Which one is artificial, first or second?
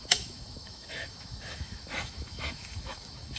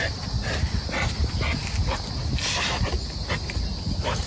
first